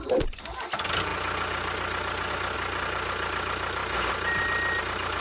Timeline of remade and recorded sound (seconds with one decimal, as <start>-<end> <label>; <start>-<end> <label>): 0.0-5.2 recorded